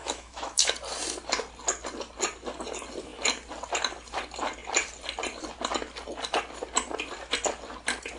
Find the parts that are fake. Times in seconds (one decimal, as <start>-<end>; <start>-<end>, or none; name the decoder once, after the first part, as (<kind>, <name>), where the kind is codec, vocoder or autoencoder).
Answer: 0.0-0.7 (autoencoder, DAC-VAE)

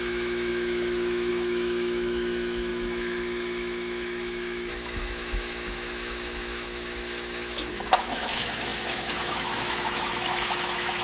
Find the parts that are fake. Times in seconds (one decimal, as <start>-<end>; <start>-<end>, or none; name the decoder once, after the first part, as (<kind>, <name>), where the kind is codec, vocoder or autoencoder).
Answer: 0.0-11.0 (autoencoder, DAC-VAE)

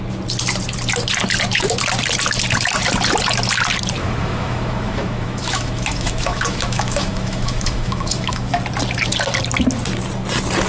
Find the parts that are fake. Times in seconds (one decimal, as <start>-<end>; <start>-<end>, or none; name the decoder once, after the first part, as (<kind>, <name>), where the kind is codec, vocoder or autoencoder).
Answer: 4.0-8.5 (autoencoder, DAC-VAE)

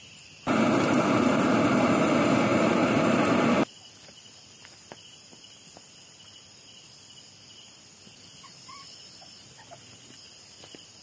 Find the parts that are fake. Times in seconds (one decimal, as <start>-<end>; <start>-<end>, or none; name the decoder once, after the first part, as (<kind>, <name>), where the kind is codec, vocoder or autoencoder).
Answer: none

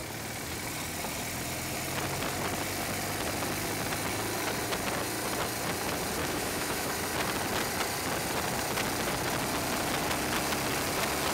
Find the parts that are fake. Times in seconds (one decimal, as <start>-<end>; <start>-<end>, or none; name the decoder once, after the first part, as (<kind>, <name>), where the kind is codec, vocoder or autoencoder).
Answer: 6.2-6.9 (autoencoder, DAC-VAE)

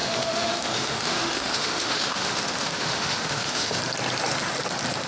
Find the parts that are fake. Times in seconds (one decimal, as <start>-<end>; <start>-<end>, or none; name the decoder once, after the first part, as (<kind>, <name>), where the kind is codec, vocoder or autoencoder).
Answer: 0.0-3.8 (autoencoder, DAC-VAE)

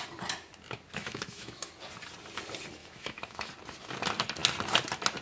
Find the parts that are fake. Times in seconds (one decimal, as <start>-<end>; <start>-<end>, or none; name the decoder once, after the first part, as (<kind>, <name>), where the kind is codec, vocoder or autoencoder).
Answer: 1.0-1.7 (autoencoder, DAC-VAE); 2.8-3.5

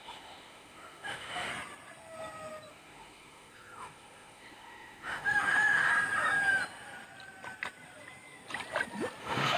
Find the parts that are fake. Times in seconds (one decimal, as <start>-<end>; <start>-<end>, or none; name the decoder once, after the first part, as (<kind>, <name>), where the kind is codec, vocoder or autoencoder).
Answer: 0.0-1.5 (autoencoder, DAC-VAE); 2.7-5.9; 9.2-9.6